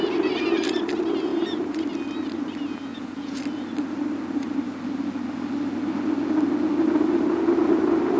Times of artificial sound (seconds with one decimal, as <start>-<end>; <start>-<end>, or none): 2.9-3.4